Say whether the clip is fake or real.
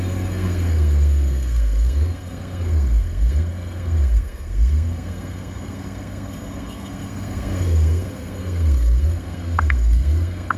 fake